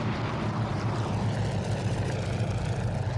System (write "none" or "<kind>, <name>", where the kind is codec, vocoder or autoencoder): vocoder, BigVGAN v2